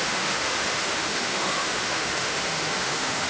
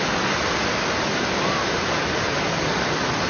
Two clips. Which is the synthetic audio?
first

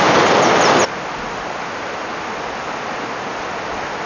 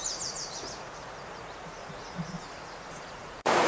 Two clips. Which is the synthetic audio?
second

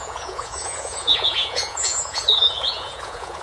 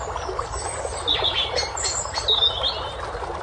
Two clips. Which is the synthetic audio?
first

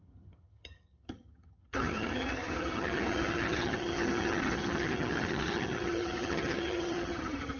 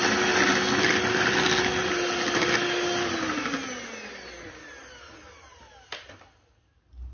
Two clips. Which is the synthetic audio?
first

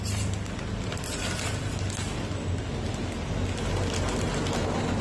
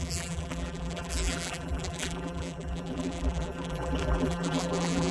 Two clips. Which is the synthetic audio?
second